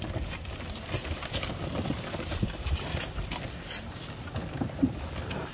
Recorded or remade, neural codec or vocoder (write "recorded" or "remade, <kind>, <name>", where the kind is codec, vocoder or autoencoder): recorded